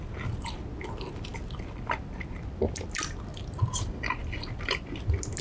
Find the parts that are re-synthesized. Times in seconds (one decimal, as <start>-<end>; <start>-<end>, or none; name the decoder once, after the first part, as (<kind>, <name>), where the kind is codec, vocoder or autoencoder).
none